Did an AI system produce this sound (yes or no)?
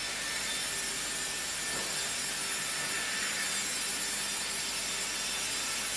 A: no